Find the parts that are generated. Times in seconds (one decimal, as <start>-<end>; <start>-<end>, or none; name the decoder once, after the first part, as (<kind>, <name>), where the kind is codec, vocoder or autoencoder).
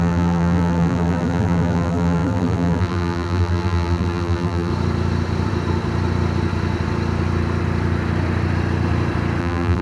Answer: 0.0-4.7 (vocoder, BigVGAN v2); 9.4-9.8